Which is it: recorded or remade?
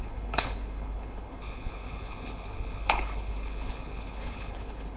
remade